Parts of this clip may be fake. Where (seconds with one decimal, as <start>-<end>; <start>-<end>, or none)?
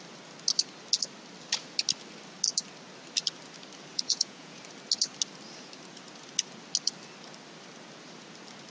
3.9-4.6